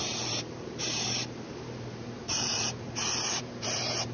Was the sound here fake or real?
fake